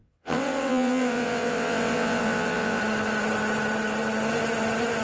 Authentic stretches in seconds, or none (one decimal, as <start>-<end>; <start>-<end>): 2.8-5.0

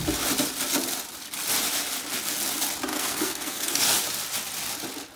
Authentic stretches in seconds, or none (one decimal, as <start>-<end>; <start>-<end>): 0.0-2.9; 4.0-5.2